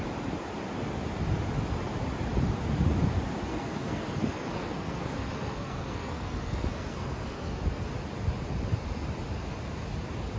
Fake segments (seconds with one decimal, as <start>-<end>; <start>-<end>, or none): 3.5-7.9